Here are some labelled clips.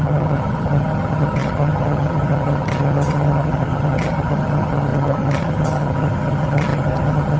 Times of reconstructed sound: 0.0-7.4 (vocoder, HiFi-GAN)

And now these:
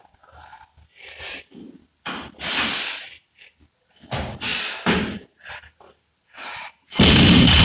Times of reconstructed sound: none

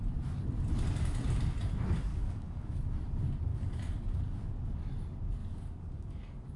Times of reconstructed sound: 2.1-2.8 (codec, DAC); 3.5-4.2; 5.4-6.6

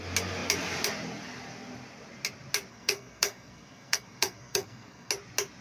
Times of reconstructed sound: 2.7-5.1 (codec, SNAC)

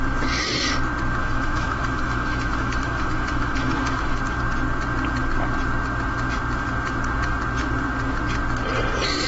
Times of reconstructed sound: 1.2-4.2 (autoencoder, DAC-VAE)

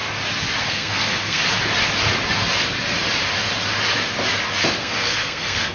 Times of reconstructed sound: 0.6-1.4 (codec, SNAC); 4.8-5.7

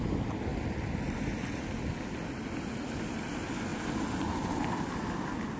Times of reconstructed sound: none